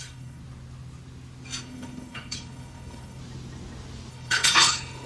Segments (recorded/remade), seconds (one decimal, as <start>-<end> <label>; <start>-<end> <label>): 0.0-0.4 remade; 0.4-1.6 recorded; 1.6-3.2 remade; 3.2-4.1 recorded; 4.1-5.1 remade